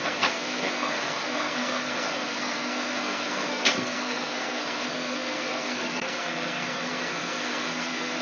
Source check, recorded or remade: remade